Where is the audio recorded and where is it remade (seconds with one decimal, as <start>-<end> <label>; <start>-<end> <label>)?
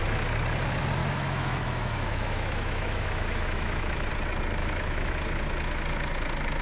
0.0-1.0 recorded; 1.0-4.1 remade; 4.1-4.6 recorded; 4.6-5.1 remade; 5.1-6.6 recorded